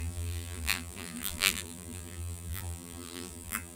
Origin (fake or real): fake